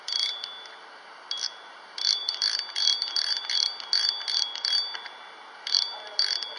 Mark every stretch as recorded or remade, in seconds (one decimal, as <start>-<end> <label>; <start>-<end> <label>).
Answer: 0.0-6.6 recorded